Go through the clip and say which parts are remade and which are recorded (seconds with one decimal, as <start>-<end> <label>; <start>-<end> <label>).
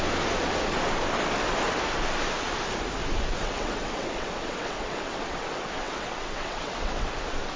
0.0-3.4 recorded; 3.4-7.1 remade; 7.1-7.6 recorded